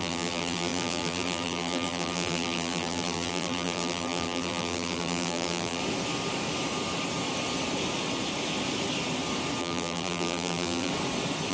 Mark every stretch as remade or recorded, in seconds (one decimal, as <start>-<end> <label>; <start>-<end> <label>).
0.0-5.8 remade; 5.8-9.6 recorded; 9.6-10.9 remade; 10.9-11.5 recorded